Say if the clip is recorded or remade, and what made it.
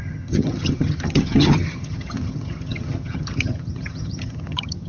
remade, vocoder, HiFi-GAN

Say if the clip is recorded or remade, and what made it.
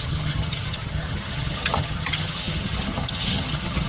remade, vocoder, HiFi-GAN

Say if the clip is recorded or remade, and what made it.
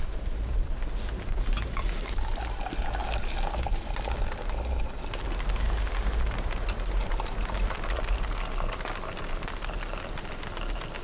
recorded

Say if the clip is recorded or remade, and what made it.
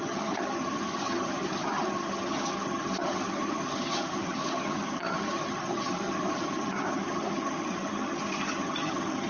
remade, vocoder, HiFi-GAN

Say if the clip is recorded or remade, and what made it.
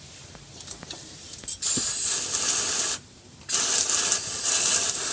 recorded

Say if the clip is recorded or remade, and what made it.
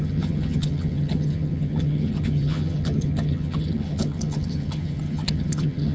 remade, vocoder, HiFi-GAN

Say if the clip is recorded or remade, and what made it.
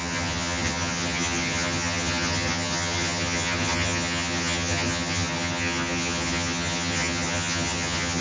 remade, vocoder, HiFi-GAN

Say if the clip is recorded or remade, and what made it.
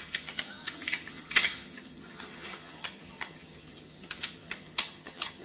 remade, vocoder, HiFi-GAN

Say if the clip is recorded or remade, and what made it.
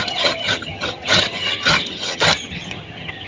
remade, vocoder, HiFi-GAN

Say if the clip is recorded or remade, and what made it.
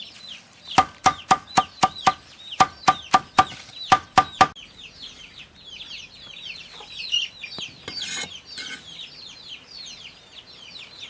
recorded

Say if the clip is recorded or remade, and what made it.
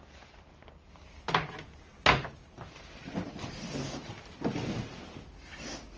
recorded